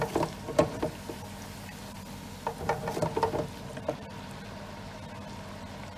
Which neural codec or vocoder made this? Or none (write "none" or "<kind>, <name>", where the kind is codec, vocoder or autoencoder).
none